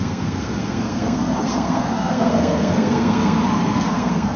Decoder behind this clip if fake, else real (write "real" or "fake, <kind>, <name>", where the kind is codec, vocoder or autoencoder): fake, codec, SNAC